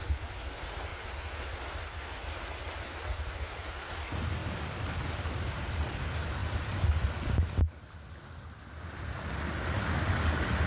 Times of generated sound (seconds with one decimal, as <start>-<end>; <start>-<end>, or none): none